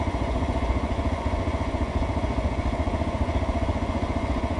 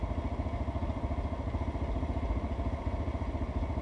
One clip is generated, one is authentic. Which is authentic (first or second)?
second